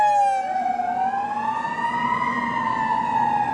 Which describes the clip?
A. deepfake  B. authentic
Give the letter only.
B